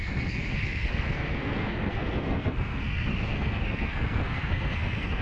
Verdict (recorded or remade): remade